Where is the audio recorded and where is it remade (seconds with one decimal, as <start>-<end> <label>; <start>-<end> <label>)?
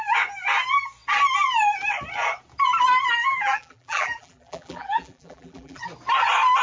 0.0-3.2 recorded; 3.2-5.8 remade; 5.8-6.6 recorded